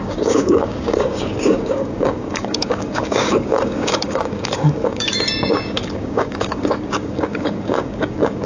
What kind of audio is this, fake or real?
fake